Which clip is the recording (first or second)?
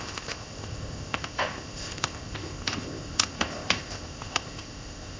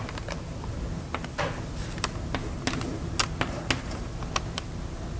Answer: second